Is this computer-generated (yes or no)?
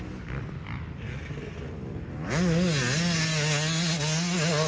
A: no